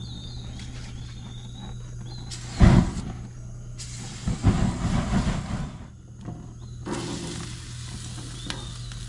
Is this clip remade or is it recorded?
recorded